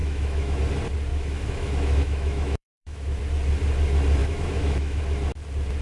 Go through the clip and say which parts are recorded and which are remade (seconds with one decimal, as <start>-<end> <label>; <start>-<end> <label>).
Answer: 0.0-0.6 remade; 0.6-1.1 recorded; 1.1-3.2 remade; 3.2-4.2 recorded; 4.2-5.0 remade; 5.0-5.8 recorded